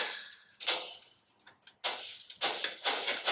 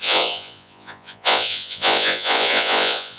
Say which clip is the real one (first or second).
first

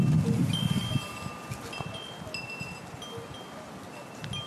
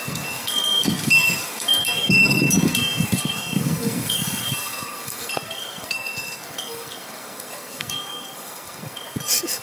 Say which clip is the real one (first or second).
first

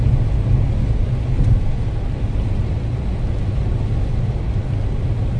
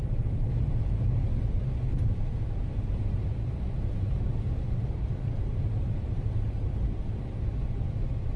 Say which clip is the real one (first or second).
first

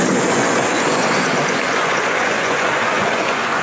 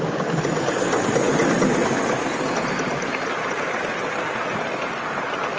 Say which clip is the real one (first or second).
second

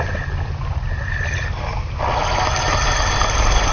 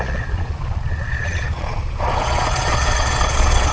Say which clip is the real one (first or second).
first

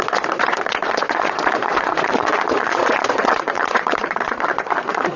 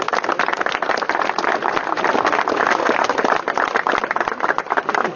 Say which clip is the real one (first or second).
second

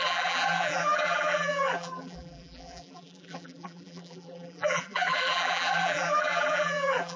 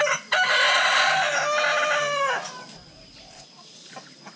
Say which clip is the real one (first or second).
second